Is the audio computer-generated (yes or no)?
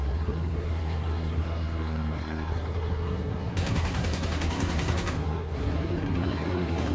yes